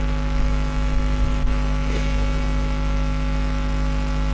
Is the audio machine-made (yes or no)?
yes